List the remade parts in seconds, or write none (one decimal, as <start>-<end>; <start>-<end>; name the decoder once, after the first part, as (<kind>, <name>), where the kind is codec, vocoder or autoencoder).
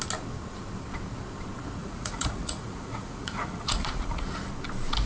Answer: 1.8-4.5 (vocoder, Vocos)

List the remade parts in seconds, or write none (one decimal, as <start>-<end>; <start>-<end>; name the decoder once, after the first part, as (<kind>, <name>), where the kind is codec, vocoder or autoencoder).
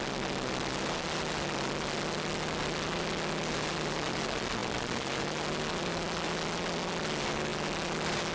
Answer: none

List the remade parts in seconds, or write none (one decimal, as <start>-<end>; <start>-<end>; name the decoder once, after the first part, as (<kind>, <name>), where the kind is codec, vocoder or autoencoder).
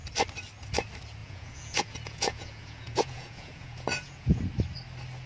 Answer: 1.2-4.4 (vocoder, Vocos)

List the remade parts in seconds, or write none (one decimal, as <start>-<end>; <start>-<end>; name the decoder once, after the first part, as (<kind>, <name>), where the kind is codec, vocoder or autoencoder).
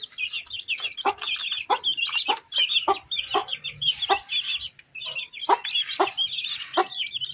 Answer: 3.4-4.0 (vocoder, BigVGAN v2)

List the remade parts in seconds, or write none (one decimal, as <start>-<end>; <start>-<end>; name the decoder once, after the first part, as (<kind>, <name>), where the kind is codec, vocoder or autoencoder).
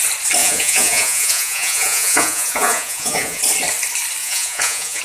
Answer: 0.4-3.4 (vocoder, Vocos); 4.2-5.0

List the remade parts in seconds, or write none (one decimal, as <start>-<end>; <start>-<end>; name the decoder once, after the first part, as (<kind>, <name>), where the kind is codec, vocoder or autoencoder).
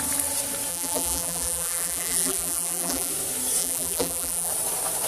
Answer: 0.7-3.1 (vocoder, BigVGAN v2); 3.6-4.5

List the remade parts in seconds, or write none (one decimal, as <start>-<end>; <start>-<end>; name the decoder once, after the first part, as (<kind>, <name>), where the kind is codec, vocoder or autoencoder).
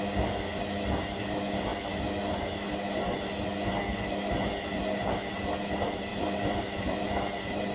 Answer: 6.1-7.0 (vocoder, BigVGAN v2)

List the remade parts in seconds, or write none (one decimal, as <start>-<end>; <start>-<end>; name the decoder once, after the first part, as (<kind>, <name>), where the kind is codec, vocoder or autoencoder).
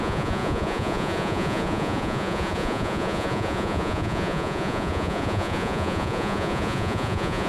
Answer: 0.0-7.5 (vocoder, Vocos)